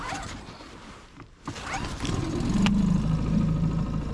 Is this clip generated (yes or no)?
no